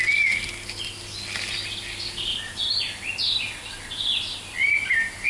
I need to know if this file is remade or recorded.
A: recorded